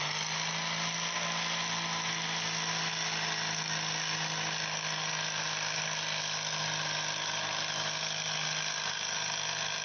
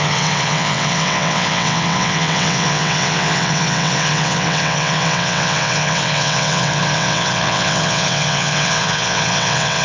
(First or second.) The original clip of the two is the first